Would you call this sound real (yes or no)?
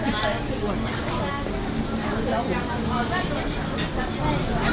yes